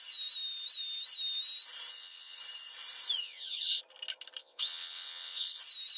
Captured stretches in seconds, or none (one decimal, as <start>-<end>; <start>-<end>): 0.0-1.9; 2.4-3.2; 3.8-4.4; 5.6-6.0